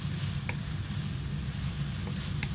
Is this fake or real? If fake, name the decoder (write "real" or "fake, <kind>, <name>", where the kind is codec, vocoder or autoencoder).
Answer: real